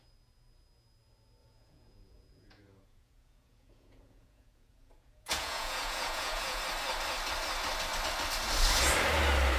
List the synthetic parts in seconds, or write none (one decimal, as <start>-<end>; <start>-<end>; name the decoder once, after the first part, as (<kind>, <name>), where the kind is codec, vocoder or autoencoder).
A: 1.4-6.6 (vocoder, Vocos)